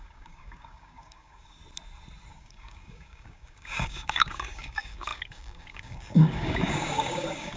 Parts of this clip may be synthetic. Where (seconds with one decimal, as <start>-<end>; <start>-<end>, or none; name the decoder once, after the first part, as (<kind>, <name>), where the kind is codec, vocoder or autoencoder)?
0.0-1.6 (codec, DAC); 2.3-7.6